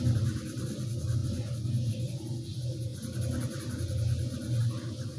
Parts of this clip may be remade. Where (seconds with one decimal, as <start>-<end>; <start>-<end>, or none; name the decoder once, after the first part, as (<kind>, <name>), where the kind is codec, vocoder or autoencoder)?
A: none